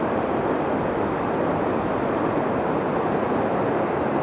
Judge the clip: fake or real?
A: real